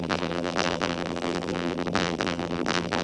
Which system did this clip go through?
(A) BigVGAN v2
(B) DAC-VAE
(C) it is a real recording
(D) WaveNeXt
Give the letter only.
A